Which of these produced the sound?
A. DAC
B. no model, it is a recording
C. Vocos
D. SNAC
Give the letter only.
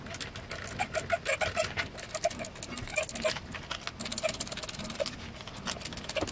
B